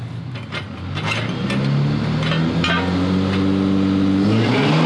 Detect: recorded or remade recorded